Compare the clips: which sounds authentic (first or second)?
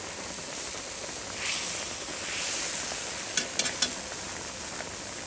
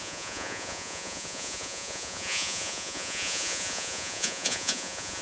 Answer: first